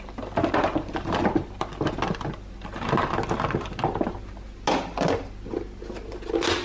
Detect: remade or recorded recorded